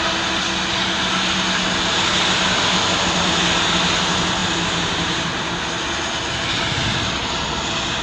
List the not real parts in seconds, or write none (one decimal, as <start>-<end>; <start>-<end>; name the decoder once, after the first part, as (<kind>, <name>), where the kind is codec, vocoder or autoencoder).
4.4-5.6 (vocoder, BigVGAN v2)